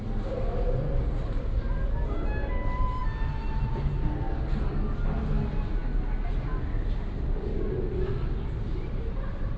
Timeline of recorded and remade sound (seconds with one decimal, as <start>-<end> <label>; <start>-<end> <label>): 0.0-9.6 recorded